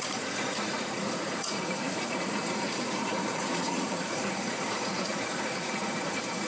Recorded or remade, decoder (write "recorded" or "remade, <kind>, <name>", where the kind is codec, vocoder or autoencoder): remade, vocoder, Vocos